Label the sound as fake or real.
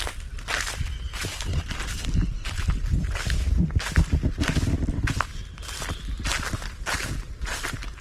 real